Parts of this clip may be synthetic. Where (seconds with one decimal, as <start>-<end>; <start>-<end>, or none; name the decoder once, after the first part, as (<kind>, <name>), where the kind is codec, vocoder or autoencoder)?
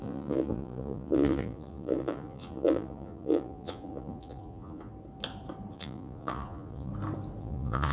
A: 0.0-4.9 (vocoder, Vocos); 5.7-6.9; 7.4-7.9